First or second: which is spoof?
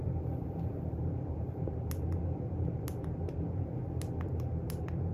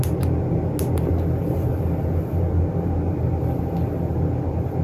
first